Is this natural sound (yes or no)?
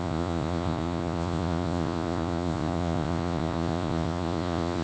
no